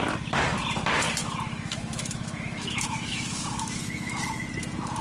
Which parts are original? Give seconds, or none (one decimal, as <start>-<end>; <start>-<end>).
0.0-1.2; 4.2-5.0

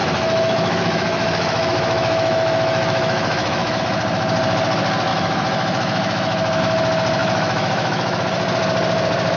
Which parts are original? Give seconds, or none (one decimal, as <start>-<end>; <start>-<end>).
3.8-5.1; 6.6-7.2; 8.2-9.4